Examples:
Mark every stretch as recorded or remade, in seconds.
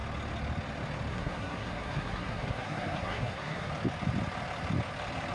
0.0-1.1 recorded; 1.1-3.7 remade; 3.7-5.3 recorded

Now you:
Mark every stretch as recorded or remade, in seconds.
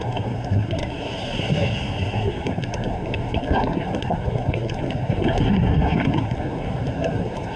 0.0-7.6 remade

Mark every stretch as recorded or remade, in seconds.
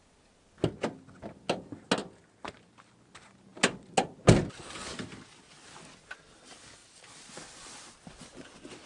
0.0-8.9 recorded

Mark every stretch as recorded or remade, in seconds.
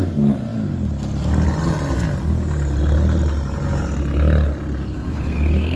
0.0-4.9 recorded; 4.9-5.8 remade